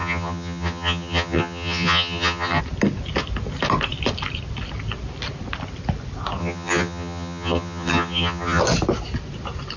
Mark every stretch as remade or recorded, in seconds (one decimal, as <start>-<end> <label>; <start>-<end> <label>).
0.0-2.6 remade; 2.6-6.4 recorded; 6.4-8.6 remade; 8.6-9.8 recorded